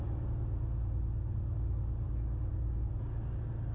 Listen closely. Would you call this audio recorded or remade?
recorded